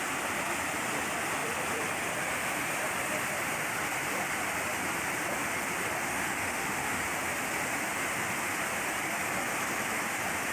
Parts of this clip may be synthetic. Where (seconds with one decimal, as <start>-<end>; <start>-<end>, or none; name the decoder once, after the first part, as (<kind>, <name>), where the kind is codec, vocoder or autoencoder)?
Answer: 6.1-7.0 (autoencoder, DAC-VAE)